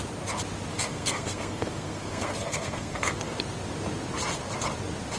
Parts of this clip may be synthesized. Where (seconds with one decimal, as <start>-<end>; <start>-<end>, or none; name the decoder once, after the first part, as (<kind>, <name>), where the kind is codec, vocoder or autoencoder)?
0.7-3.3 (codec, SNAC)